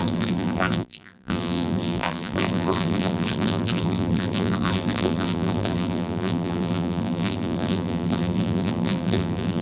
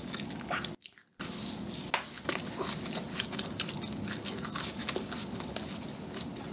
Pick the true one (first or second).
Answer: second